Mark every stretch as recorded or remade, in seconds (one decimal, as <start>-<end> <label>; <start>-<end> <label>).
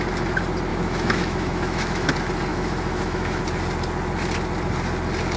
0.0-0.7 recorded; 0.7-2.1 remade; 2.1-2.5 recorded; 2.5-3.4 remade; 3.4-5.4 recorded